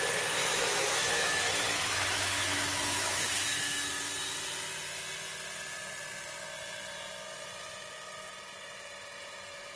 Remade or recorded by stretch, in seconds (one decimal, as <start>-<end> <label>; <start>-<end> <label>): 0.0-0.4 recorded; 0.4-3.8 remade; 3.8-9.8 recorded